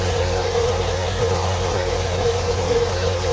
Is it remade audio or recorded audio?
remade